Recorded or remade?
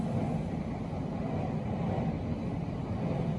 recorded